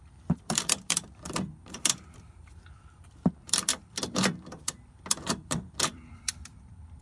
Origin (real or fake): fake